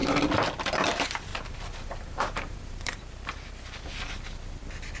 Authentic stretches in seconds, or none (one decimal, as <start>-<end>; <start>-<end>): 0.0-1.3; 3.6-5.0